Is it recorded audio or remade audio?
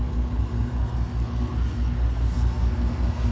remade